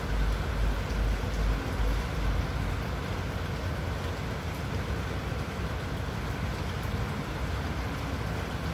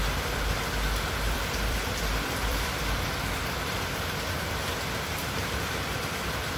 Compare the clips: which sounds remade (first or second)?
second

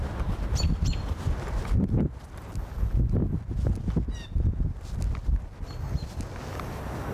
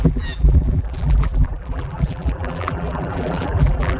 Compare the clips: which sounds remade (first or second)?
second